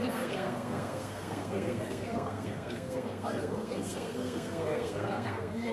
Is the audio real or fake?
fake